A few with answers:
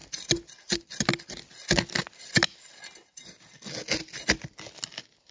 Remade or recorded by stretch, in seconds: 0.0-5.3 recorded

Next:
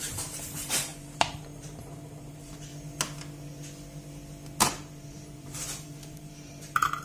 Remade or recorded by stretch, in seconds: 0.0-2.7 remade; 2.7-4.6 recorded; 4.6-7.0 remade

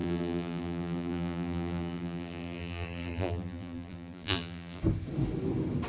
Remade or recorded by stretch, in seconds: 0.0-4.8 remade; 4.8-5.9 recorded